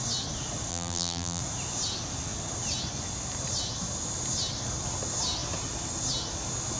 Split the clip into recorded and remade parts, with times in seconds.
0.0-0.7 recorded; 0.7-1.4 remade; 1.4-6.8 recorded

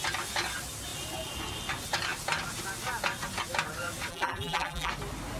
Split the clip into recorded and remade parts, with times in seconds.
0.0-4.1 recorded; 4.1-4.9 remade; 4.9-5.4 recorded

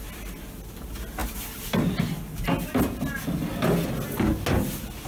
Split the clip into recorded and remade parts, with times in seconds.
0.0-5.1 recorded

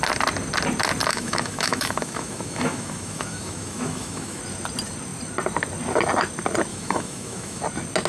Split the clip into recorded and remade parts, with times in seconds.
0.0-1.1 recorded; 1.1-4.4 remade; 4.4-6.7 recorded; 6.7-7.6 remade; 7.6-8.1 recorded

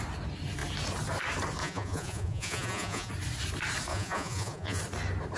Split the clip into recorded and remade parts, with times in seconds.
0.0-1.6 recorded; 1.6-3.1 remade; 3.1-3.9 recorded; 3.9-4.8 remade; 4.8-5.4 recorded

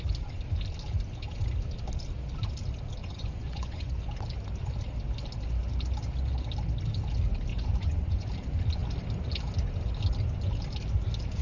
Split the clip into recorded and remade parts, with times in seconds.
0.0-3.0 recorded; 3.0-3.9 remade; 3.9-7.5 recorded; 7.5-8.3 remade; 8.3-11.4 recorded